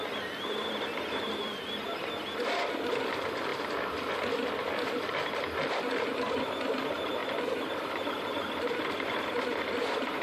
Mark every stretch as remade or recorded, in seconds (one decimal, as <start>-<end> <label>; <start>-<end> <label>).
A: 0.0-1.5 recorded; 1.5-2.1 remade; 2.1-3.5 recorded; 3.5-4.1 remade; 4.1-10.2 recorded

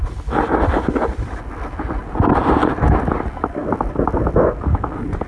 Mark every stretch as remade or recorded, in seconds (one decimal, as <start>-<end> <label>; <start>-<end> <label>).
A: 0.0-5.3 recorded

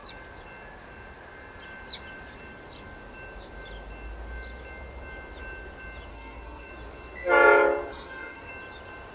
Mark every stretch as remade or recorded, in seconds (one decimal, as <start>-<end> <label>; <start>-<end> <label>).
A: 0.0-6.1 recorded; 6.1-6.7 remade; 6.7-7.9 recorded; 7.9-8.5 remade; 8.5-9.1 recorded